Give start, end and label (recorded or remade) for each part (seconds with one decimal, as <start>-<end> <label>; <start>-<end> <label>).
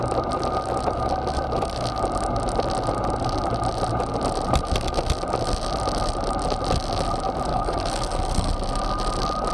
0.0-7.5 recorded; 7.5-8.5 remade; 8.5-9.5 recorded